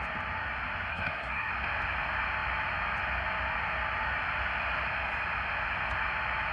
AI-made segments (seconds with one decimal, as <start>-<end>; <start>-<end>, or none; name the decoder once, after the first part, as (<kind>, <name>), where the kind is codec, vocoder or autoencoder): 0.9-1.5 (codec, SNAC)